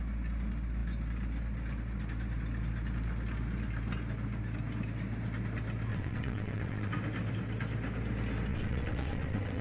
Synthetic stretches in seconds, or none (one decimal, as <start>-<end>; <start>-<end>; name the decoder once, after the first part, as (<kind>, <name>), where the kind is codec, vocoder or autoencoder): 5.9-6.9 (vocoder, WaveNeXt); 8.5-9.6